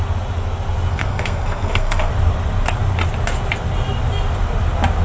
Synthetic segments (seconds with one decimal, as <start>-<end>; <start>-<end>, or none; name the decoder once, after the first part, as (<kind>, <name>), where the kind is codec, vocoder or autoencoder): 0.9-2.1 (codec, SNAC)